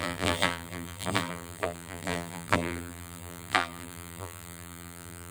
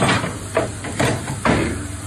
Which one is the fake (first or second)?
first